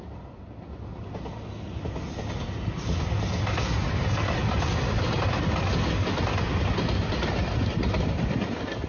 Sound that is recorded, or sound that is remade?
recorded